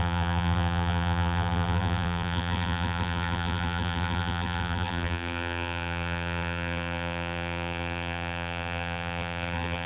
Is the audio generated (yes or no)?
yes